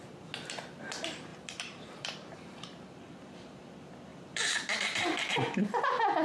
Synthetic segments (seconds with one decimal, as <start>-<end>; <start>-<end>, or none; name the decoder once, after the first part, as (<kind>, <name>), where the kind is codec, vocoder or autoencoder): 1.3-3.6 (vocoder, BigVGAN v2); 4.1-5.8